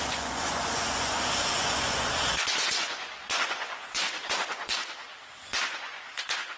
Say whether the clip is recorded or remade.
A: remade